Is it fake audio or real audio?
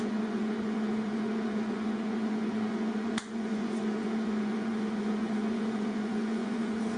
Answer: fake